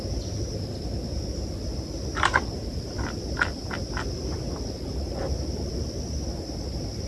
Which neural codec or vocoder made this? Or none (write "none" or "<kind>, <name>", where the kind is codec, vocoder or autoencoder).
none